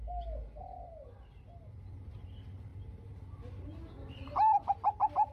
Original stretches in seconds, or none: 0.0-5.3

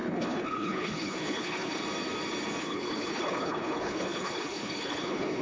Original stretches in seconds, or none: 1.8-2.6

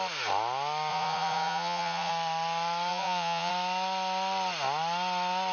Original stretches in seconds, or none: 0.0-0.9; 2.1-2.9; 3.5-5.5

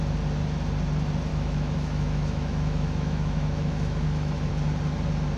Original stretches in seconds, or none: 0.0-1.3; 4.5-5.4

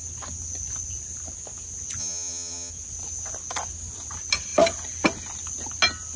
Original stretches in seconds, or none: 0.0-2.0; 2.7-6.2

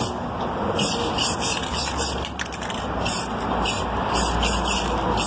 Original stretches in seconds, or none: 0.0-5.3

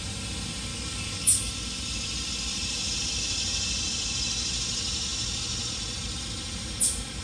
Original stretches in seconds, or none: 0.0-0.7; 1.5-7.2

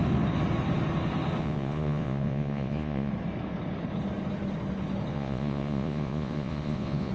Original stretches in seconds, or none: 0.0-1.4; 3.1-5.1